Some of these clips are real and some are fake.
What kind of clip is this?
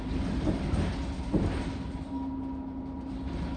real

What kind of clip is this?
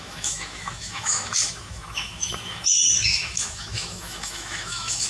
fake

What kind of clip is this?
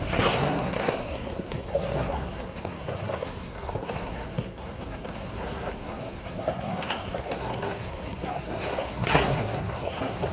fake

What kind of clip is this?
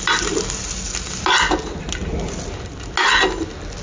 real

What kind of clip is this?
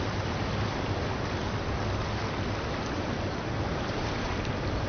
real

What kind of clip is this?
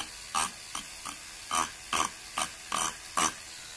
real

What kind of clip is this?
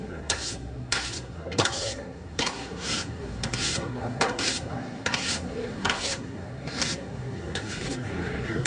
fake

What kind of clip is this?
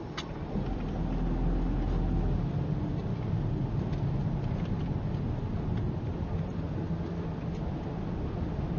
real